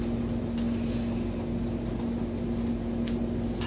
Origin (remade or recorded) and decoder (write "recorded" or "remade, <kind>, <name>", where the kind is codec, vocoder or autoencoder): recorded